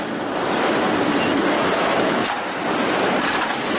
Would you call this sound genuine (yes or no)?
yes